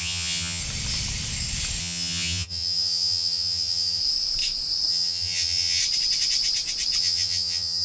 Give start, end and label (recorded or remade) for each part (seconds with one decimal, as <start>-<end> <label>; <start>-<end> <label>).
0.0-0.6 remade; 0.6-1.8 recorded; 1.8-4.0 remade; 4.0-4.9 recorded; 4.9-5.8 remade; 5.8-7.0 recorded; 7.0-7.8 remade